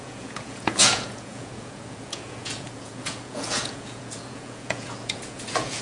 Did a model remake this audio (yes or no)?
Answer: yes